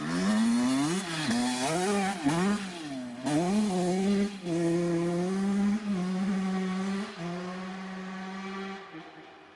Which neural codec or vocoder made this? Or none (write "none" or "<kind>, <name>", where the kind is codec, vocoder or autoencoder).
none